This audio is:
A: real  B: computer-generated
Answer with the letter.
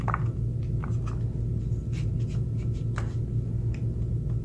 A